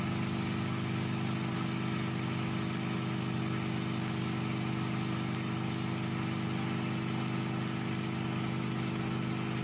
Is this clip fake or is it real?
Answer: real